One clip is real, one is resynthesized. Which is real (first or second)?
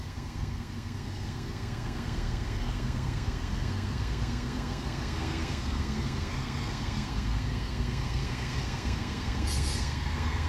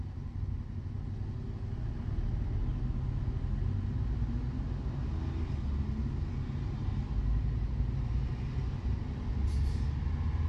second